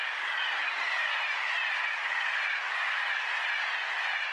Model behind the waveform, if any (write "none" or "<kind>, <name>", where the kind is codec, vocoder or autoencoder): none